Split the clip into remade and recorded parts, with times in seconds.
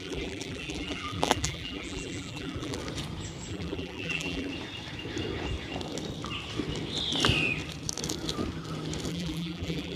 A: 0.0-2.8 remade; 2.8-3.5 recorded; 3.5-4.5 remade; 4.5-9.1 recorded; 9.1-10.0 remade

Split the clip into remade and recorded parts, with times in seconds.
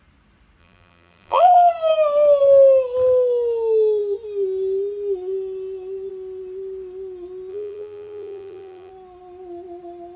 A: 0.0-0.6 recorded; 0.6-1.7 remade; 1.7-7.5 recorded; 7.5-8.9 remade; 8.9-10.2 recorded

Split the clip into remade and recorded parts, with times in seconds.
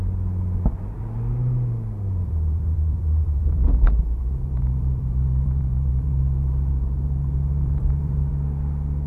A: 0.0-2.2 recorded; 2.2-3.6 remade; 3.6-4.2 recorded; 4.2-8.3 remade; 8.3-9.1 recorded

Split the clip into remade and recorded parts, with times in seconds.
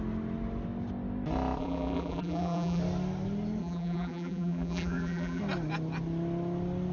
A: 0.0-1.6 recorded; 1.6-2.8 remade; 2.8-3.6 recorded; 3.6-5.4 remade; 5.4-6.9 recorded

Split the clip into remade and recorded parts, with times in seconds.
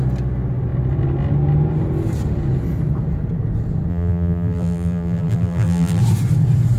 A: 0.0-3.9 recorded; 3.9-6.0 remade; 6.0-6.8 recorded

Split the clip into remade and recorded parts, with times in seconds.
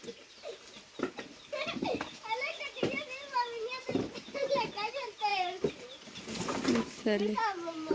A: 0.0-7.9 remade